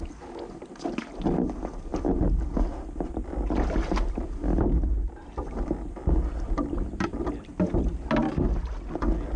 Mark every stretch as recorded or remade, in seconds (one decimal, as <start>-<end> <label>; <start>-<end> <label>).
0.0-9.4 recorded

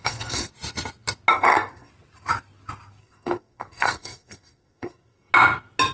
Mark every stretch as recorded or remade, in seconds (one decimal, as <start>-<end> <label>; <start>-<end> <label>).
0.0-0.5 remade; 0.5-1.3 recorded; 1.3-1.9 remade; 1.9-3.0 recorded; 3.0-5.3 remade; 5.3-5.9 recorded

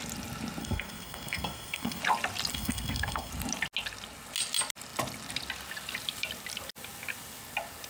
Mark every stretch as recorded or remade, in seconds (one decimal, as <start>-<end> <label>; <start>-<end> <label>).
0.0-0.6 recorded; 0.6-2.0 remade; 2.0-2.5 recorded; 2.5-3.3 remade; 3.3-7.9 recorded

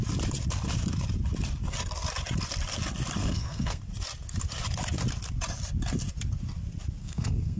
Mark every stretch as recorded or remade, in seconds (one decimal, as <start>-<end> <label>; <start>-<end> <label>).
0.0-3.2 recorded; 3.2-3.8 remade; 3.8-7.0 recorded; 7.0-7.6 remade

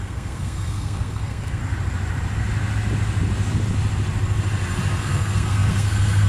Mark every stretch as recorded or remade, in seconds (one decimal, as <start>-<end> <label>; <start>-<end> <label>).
0.0-1.6 remade; 1.6-5.0 recorded; 5.0-6.3 remade

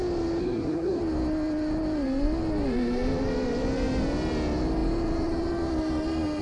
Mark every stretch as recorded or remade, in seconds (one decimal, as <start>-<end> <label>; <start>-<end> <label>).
0.0-0.4 recorded; 0.4-1.0 remade; 1.0-6.4 recorded

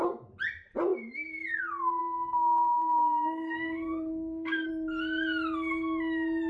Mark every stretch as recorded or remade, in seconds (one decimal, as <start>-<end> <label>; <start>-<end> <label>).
0.0-2.0 recorded; 2.0-4.7 remade; 4.7-6.5 recorded